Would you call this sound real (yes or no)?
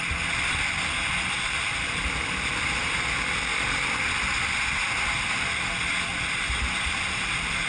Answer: yes